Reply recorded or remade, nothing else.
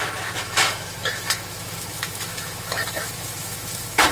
remade